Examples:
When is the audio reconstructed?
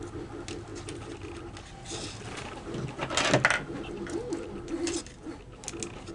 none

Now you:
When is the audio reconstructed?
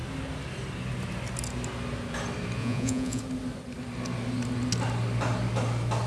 2.6-3.2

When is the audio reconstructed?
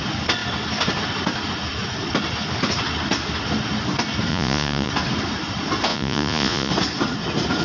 4.3-4.9; 5.9-6.7